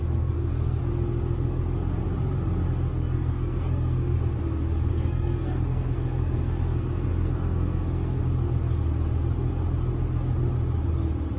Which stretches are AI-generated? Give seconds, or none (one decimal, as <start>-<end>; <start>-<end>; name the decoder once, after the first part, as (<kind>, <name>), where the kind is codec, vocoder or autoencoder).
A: 0.0-0.8 (codec, SNAC); 2.9-4.2; 4.9-8.2